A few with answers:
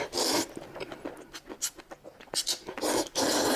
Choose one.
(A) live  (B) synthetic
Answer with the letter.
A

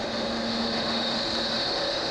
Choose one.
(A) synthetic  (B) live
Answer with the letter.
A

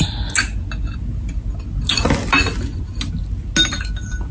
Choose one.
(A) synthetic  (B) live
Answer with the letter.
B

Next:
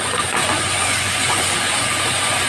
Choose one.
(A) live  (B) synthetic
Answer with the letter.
B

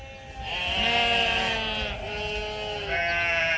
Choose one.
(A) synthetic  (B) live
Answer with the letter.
B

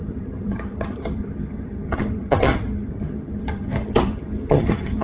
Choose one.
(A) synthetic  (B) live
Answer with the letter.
A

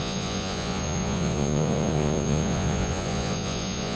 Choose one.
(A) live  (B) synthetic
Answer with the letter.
B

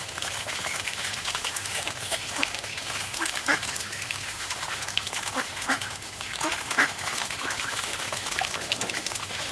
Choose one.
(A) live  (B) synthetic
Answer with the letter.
B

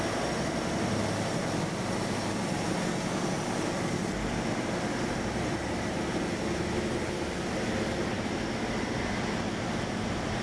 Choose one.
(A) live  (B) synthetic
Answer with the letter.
A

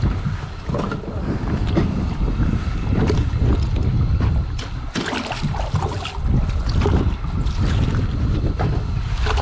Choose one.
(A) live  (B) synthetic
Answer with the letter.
A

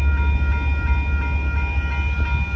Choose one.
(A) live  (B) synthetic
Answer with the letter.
A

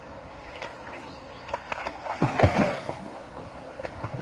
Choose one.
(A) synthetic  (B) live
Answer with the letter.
A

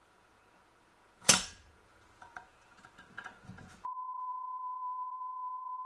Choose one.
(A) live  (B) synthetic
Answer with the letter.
B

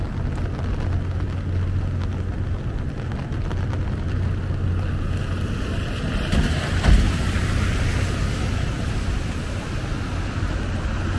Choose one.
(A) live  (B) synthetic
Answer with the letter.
A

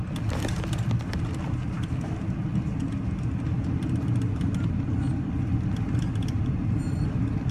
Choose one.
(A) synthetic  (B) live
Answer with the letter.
B